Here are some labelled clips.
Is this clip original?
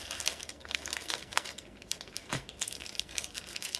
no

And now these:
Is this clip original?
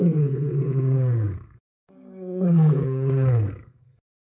no